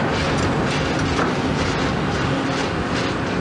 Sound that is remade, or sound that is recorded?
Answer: recorded